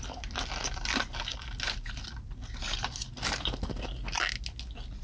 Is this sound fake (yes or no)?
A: no